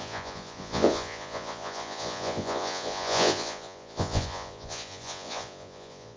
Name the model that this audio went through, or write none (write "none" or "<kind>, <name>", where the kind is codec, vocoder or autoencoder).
vocoder, Vocos